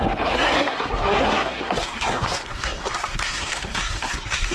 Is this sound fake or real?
fake